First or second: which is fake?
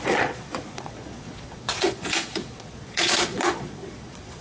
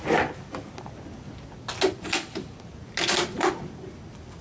first